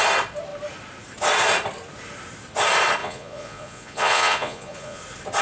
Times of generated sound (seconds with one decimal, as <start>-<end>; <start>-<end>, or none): 3.0-5.0